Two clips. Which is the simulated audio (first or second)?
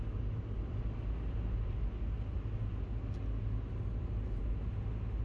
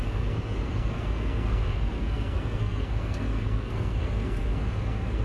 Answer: second